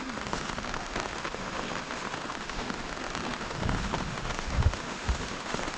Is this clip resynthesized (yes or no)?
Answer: yes